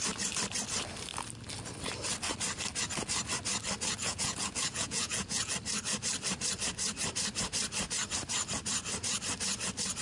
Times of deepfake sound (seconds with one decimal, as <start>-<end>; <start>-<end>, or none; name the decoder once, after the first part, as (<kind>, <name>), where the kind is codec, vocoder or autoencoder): 4.0-5.5 (vocoder, Vocos)